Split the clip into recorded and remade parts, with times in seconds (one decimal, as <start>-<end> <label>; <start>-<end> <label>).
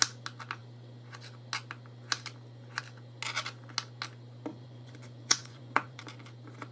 0.0-4.5 recorded; 4.5-6.0 remade; 6.0-6.7 recorded